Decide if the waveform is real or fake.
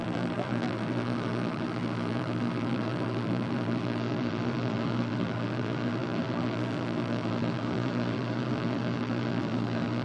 fake